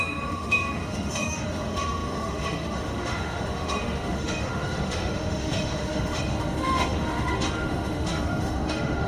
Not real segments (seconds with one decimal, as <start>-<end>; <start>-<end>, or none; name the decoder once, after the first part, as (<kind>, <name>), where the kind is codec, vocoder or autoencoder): 0.0-9.1 (autoencoder, DAC-VAE)